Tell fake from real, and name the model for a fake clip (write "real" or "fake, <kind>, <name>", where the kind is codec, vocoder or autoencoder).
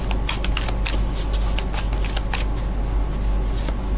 real